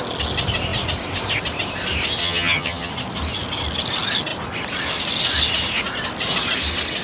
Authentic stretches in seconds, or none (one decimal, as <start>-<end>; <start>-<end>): 0.0-2.2; 2.9-7.0